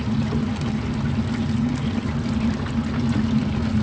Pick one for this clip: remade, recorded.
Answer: recorded